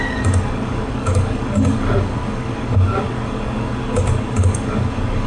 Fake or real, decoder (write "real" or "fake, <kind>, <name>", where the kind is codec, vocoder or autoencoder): fake, codec, DAC